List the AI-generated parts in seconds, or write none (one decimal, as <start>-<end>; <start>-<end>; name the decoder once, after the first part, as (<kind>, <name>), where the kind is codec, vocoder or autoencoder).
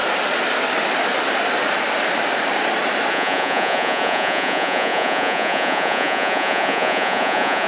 3.1-7.7 (vocoder, Vocos)